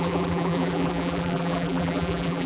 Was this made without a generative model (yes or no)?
no